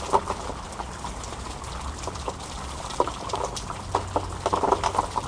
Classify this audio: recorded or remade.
recorded